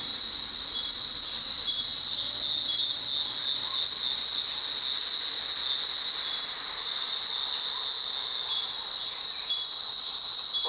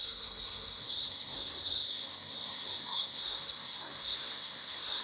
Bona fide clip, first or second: first